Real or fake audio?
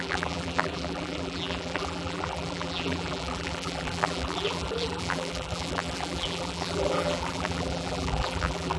fake